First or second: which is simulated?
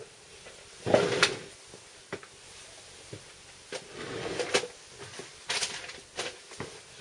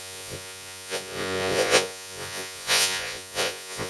second